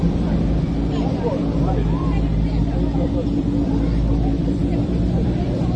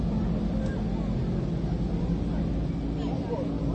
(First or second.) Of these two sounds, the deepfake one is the first